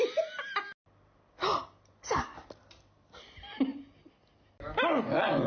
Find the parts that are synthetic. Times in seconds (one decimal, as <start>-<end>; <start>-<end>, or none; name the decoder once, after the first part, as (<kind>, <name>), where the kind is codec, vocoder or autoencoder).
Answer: none